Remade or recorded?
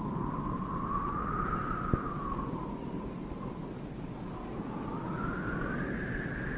recorded